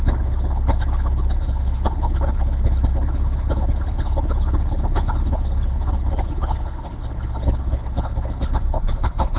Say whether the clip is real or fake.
fake